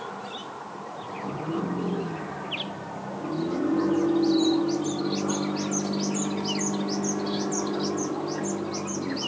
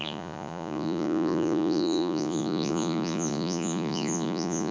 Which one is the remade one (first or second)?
second